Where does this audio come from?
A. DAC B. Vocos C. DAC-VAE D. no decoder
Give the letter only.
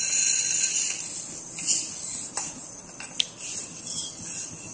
D